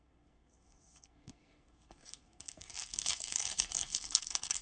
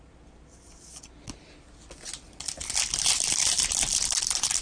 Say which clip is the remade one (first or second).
first